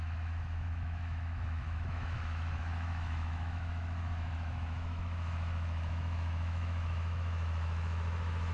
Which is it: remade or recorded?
remade